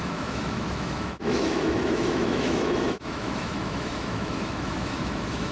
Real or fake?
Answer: fake